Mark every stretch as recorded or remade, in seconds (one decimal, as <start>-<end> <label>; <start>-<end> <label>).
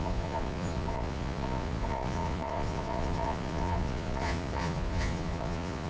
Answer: 0.0-5.9 remade